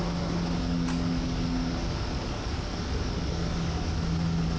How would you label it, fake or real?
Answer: fake